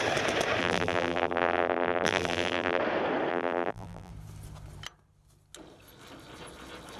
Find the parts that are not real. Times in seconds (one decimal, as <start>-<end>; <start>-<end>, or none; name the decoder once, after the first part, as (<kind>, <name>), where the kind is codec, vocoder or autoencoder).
0.6-2.8 (vocoder, BigVGAN v2); 3.3-4.1